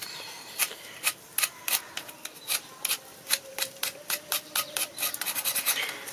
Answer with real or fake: fake